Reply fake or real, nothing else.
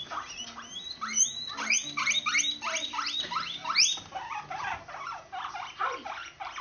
real